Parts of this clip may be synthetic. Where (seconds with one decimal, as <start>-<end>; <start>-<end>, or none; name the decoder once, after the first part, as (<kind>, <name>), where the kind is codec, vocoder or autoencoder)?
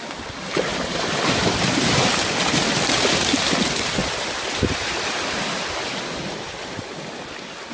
0.7-3.4 (vocoder, BigVGAN v2); 4.0-4.8